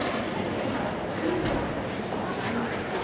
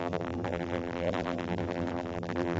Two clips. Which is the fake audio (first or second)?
second